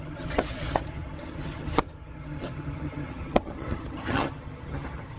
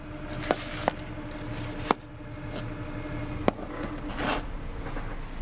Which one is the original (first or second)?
second